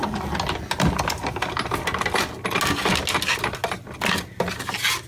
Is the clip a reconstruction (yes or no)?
no